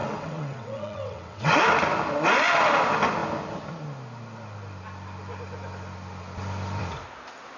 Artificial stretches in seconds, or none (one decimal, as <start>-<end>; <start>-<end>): 0.0-1.6